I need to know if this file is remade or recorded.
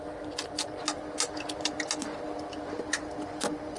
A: recorded